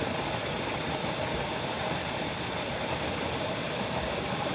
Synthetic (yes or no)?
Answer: yes